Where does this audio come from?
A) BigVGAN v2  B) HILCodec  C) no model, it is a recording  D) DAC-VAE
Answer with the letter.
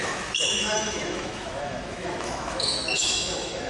D